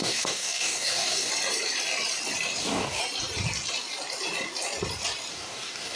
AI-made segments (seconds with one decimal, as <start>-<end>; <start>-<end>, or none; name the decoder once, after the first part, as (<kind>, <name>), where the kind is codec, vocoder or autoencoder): 0.0-1.3 (codec, DAC); 2.6-3.0; 5.3-6.0